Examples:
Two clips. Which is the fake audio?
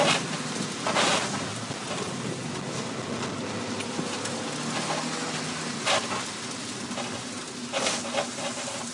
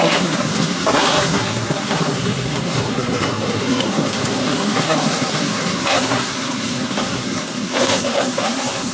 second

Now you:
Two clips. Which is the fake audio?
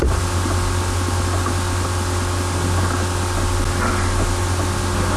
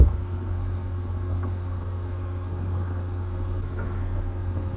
second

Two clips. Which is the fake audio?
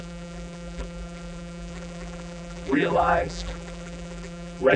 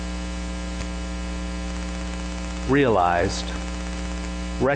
first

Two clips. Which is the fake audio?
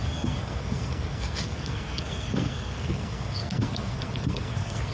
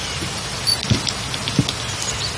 first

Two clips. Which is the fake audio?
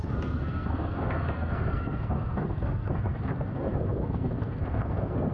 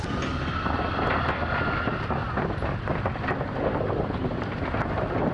first